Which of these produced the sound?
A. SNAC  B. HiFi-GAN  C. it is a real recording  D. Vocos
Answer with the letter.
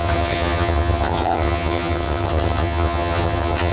B